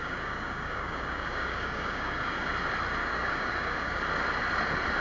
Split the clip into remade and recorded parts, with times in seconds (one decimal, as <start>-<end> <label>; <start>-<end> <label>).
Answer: 0.0-2.5 remade; 2.5-3.0 recorded; 3.0-4.0 remade; 4.0-5.0 recorded